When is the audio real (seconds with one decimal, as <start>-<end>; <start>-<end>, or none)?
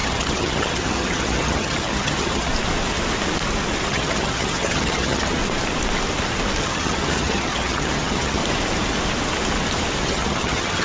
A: 2.5-3.9; 5.4-6.6; 8.4-10.0